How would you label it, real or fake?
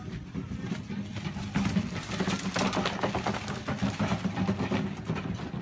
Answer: real